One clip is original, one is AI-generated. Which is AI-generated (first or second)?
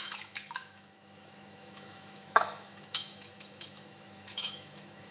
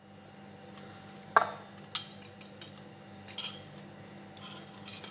first